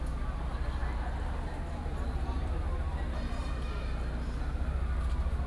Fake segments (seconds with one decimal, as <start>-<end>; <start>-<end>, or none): none